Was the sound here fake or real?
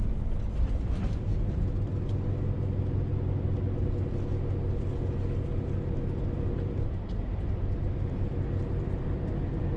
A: real